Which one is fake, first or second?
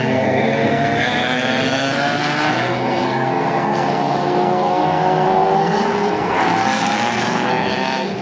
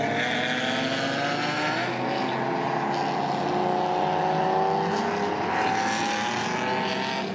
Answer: first